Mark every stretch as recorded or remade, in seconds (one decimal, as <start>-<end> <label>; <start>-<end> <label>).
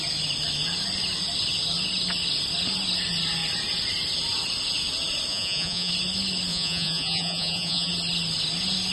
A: 0.0-5.3 recorded; 5.3-5.9 remade; 5.9-6.5 recorded; 6.5-7.9 remade; 7.9-8.9 recorded